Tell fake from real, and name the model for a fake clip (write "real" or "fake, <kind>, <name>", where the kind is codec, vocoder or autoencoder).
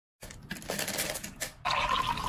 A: real